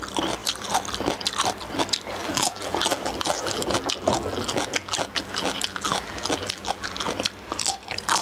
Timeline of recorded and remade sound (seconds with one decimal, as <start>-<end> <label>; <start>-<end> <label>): 0.0-2.2 recorded; 2.2-7.1 remade; 7.1-8.2 recorded